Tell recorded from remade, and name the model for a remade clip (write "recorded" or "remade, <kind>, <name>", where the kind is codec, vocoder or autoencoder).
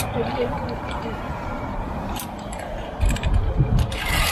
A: remade, vocoder, BigVGAN v2